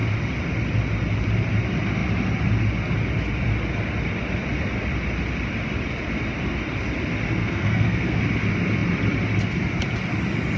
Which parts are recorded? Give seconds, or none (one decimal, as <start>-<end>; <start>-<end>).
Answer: 0.0-7.4; 8.2-10.6

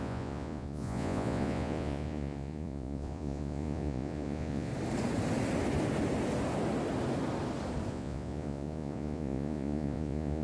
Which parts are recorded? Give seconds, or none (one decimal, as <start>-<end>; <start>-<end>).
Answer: 4.7-7.9